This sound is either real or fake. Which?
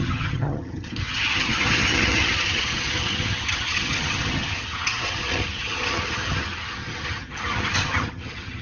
fake